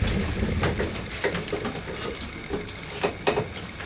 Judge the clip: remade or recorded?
recorded